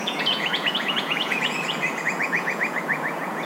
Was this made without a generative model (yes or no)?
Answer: no